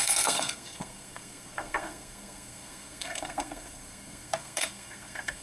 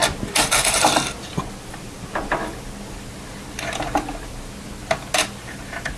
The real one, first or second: second